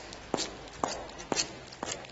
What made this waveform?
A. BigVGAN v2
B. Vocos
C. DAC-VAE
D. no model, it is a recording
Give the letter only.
D